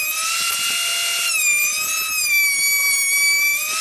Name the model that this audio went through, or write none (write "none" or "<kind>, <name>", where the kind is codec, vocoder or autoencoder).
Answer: none